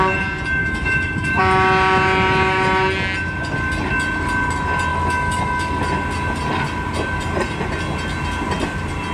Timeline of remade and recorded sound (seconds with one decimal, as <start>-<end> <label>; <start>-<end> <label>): 0.0-0.6 recorded; 0.6-1.4 remade; 1.4-4.9 recorded; 4.9-5.8 remade; 5.8-9.1 recorded